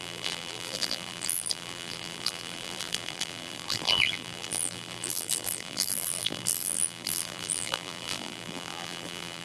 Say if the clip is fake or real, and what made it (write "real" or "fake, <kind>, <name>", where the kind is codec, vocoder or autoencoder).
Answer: fake, vocoder, BigVGAN v2